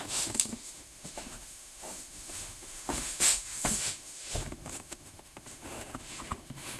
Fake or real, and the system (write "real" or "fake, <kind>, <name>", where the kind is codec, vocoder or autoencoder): fake, autoencoder, DAC-VAE